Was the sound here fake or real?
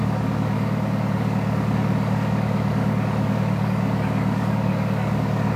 fake